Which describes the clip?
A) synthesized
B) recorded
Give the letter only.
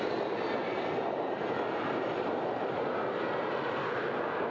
B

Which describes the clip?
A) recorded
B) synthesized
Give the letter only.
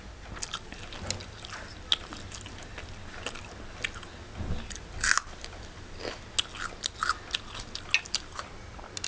A